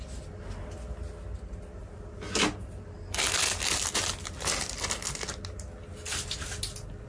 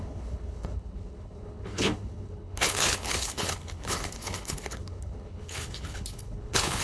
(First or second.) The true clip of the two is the first